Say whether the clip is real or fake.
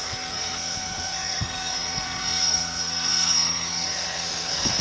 fake